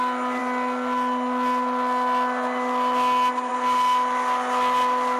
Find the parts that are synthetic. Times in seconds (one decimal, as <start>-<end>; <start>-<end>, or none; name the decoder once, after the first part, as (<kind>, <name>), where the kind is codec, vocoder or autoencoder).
none